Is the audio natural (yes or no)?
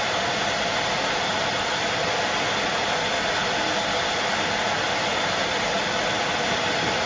yes